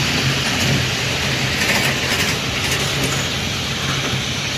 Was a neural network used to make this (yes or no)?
no